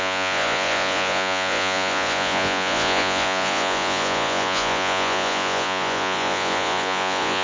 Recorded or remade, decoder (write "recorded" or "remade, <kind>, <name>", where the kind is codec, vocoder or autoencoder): remade, vocoder, Vocos